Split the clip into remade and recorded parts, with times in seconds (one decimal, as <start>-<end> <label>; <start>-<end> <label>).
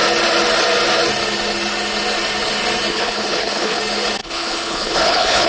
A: 0.0-2.9 recorded; 2.9-3.8 remade; 3.8-4.2 recorded; 4.2-5.5 remade